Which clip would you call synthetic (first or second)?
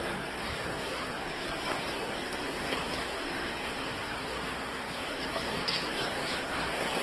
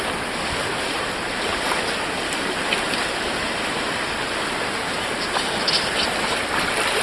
first